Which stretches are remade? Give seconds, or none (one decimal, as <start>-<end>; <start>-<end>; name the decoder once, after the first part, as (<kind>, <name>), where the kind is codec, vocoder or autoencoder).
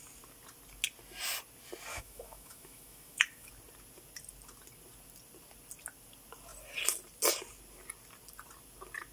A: 1.9-3.5 (autoencoder, DAC-VAE)